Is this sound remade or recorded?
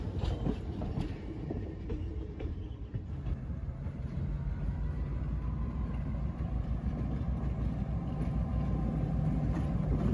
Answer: remade